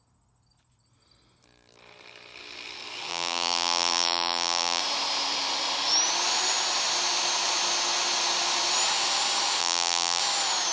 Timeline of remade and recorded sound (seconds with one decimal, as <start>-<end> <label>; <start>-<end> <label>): 0.0-3.1 recorded; 3.1-4.8 remade; 4.8-9.6 recorded; 9.6-10.2 remade; 10.2-10.7 recorded